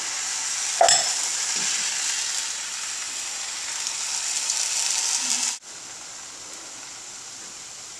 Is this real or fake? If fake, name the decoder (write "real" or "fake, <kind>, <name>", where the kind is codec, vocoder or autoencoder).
real